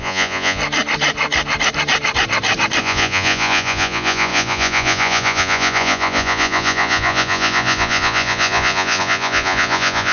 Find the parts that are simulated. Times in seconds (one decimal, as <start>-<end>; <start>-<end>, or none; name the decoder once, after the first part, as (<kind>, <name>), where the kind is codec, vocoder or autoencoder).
0.0-0.6 (vocoder, Vocos); 2.8-10.1